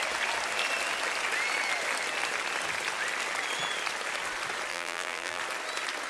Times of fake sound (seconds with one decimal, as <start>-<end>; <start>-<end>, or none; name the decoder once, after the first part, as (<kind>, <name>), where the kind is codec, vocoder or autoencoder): 4.7-5.4 (vocoder, BigVGAN v2)